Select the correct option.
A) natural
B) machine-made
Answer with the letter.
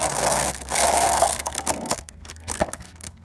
B